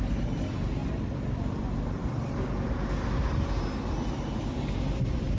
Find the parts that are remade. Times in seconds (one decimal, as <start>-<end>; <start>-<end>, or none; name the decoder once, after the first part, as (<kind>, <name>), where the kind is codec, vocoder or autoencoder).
none